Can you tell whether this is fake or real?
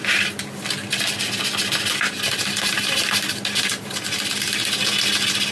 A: real